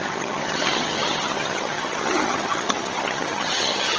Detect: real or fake fake